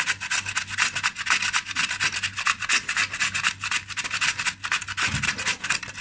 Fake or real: real